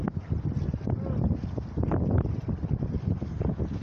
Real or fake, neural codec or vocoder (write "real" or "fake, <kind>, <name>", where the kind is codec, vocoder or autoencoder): real